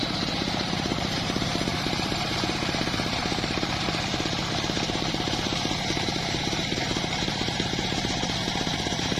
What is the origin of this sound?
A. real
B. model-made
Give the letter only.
B